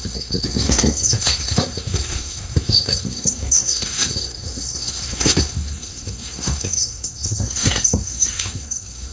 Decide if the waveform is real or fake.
fake